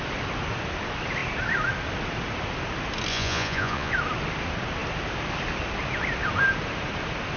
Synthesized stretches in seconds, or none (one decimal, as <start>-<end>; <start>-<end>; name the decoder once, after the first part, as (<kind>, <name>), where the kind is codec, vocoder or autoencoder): 3.1-3.9 (vocoder, Vocos)